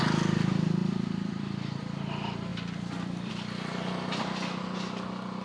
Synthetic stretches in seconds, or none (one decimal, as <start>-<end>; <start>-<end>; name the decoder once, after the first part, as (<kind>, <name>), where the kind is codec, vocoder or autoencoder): 0.8-1.8 (vocoder, BigVGAN v2); 2.5-3.3